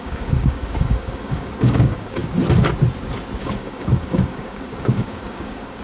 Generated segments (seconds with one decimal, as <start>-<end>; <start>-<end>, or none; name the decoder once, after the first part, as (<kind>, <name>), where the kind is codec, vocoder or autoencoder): 0.0-2.2 (codec, DAC); 3.4-5.8